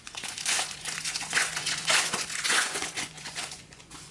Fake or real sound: fake